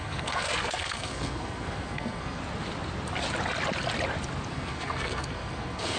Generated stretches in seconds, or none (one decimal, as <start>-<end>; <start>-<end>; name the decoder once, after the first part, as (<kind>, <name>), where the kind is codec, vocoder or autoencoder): 0.0-2.4 (codec, SNAC); 4.5-6.0